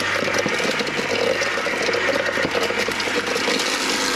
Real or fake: real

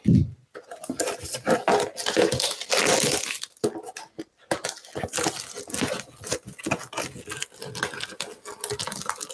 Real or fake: real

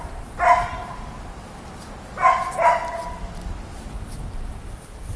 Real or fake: real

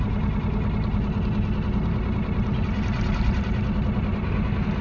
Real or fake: real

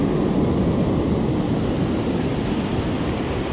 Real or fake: real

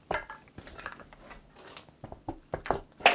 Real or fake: real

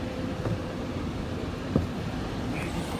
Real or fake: fake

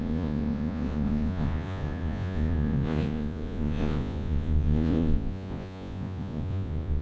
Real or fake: fake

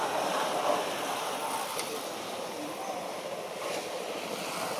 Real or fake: real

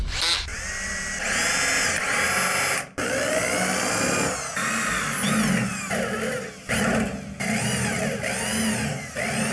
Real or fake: real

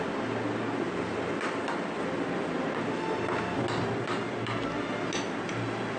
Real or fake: real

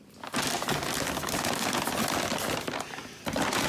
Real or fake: real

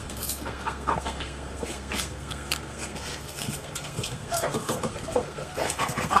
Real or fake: fake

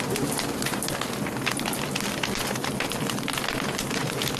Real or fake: real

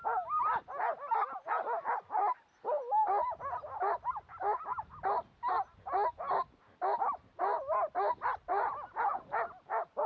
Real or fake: real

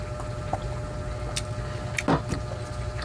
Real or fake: real